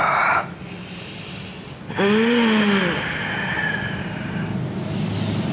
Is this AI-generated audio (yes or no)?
no